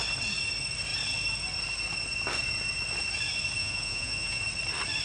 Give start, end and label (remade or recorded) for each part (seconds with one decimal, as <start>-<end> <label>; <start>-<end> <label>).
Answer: 0.0-3.6 recorded; 3.6-4.4 remade; 4.4-5.0 recorded